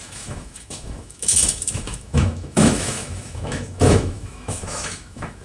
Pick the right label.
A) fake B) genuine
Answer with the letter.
A